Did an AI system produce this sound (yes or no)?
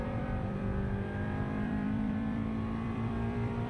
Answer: yes